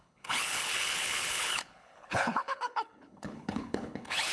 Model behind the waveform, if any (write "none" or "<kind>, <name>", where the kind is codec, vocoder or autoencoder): codec, HILCodec